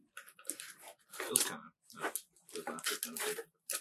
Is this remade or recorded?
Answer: recorded